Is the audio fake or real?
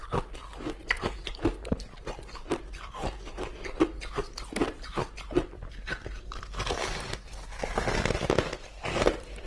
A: real